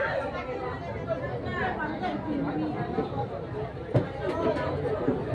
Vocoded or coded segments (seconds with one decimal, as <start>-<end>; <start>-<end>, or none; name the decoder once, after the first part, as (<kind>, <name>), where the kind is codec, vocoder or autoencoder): none

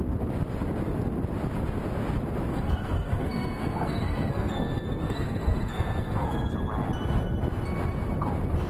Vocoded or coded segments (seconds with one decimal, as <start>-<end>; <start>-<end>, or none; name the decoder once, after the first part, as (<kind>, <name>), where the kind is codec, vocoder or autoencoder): 2.5-6.5 (codec, SNAC)

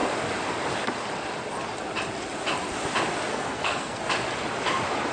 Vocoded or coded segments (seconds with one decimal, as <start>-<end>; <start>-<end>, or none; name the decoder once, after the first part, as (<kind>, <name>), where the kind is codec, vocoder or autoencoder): 3.3-4.0 (codec, SNAC)

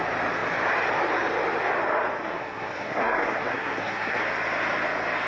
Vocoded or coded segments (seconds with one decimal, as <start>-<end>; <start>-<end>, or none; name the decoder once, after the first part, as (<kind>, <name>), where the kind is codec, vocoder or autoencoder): 2.2-4.2 (codec, SNAC)

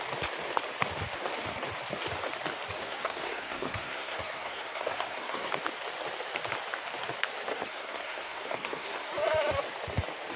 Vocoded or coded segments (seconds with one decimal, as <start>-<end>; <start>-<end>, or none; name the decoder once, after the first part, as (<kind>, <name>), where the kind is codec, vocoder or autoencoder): 2.8-5.5 (codec, SNAC); 7.5-9.1

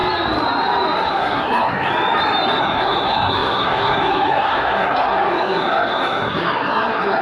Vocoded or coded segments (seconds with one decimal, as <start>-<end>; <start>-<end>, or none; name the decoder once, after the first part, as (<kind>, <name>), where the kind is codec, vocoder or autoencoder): 1.1-1.9 (codec, SNAC); 2.6-7.2